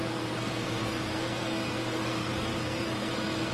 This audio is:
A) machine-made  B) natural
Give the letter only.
A